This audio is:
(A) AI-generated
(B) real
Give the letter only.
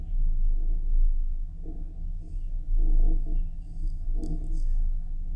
B